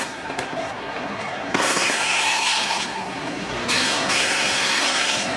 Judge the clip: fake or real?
fake